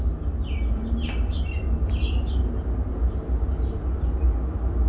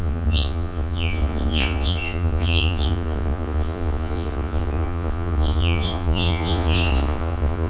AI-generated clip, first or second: second